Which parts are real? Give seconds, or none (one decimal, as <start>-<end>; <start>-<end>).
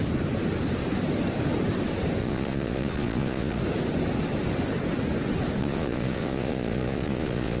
0.0-2.2; 3.6-5.6